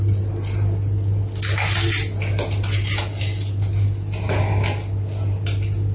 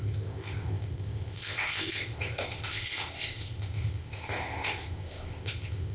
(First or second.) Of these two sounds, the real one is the first